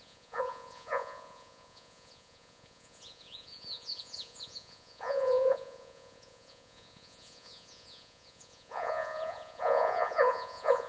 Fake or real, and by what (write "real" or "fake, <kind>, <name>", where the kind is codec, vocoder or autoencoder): fake, vocoder, Vocos